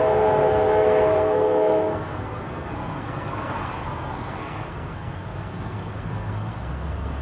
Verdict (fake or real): fake